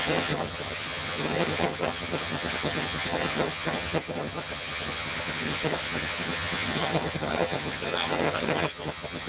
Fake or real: fake